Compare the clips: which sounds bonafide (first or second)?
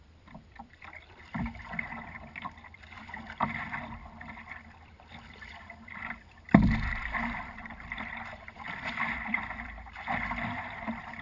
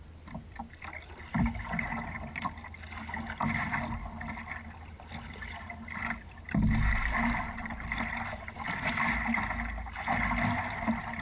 second